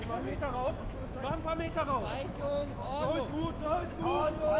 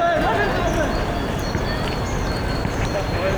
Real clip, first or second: second